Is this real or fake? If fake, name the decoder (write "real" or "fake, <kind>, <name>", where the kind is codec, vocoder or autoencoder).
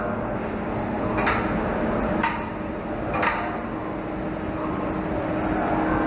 real